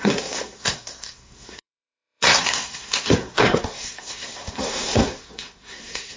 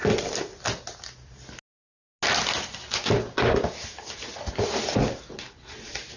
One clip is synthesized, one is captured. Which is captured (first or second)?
second